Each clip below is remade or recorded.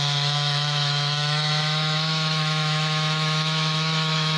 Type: remade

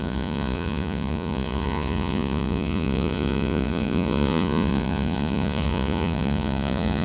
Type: remade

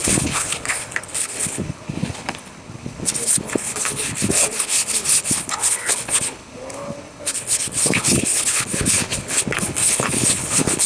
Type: remade